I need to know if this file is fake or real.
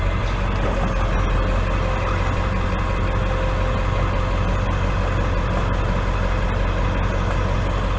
real